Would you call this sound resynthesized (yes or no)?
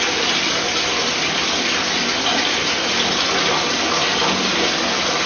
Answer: no